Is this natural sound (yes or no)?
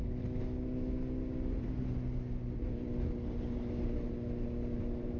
yes